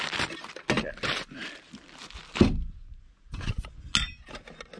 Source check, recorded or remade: recorded